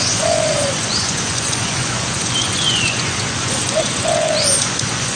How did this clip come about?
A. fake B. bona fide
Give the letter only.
A